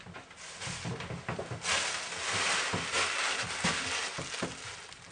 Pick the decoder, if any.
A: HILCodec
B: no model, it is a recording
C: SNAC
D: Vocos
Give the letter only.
B